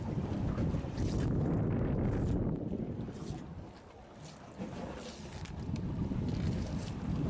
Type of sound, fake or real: real